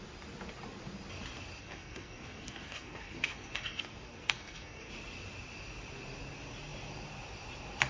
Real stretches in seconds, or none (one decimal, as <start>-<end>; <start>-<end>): 0.0-1.6; 4.9-7.9